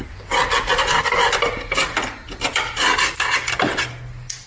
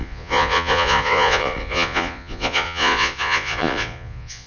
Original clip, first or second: first